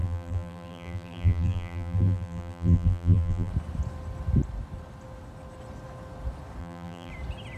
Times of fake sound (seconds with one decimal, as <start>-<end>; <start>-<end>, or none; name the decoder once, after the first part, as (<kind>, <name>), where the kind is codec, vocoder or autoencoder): 0.0-3.5 (vocoder, BigVGAN v2); 6.6-7.1